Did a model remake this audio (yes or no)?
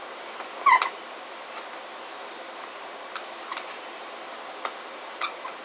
yes